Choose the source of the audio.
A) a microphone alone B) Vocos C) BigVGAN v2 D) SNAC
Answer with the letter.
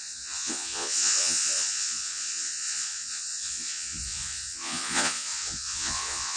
B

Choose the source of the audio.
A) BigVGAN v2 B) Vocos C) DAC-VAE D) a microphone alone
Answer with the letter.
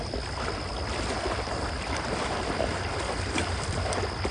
D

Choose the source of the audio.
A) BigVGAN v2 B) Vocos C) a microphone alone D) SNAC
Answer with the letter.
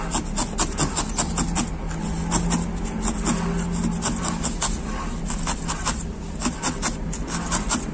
C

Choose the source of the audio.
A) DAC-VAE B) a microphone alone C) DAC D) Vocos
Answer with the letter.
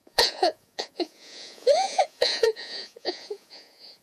D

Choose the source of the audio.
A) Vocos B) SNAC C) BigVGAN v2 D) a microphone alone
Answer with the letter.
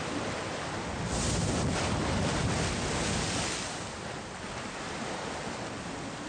D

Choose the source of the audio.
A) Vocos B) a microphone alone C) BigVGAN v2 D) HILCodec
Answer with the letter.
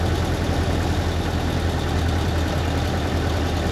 B